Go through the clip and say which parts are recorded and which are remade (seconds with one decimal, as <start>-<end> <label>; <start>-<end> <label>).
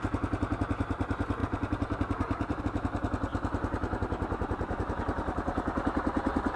0.0-1.4 recorded; 1.4-2.6 remade; 2.6-6.6 recorded